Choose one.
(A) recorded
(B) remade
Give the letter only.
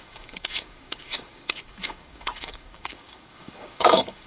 B